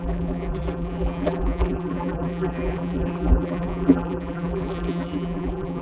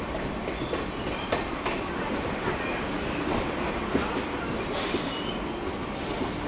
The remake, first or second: first